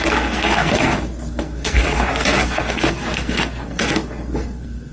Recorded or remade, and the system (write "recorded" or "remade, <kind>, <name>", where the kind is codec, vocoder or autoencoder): remade, codec, SNAC